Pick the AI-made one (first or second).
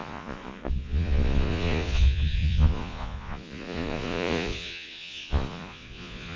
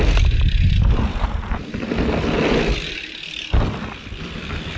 first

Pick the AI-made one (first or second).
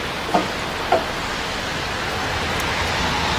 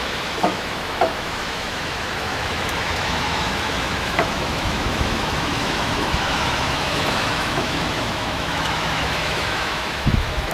second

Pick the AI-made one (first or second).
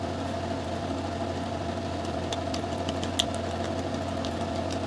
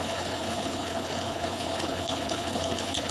second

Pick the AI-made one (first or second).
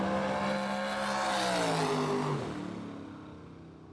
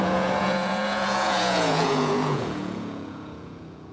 second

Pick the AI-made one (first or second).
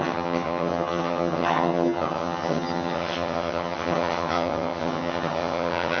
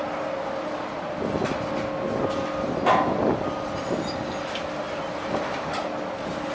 first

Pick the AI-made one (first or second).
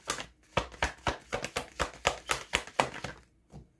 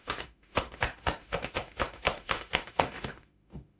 second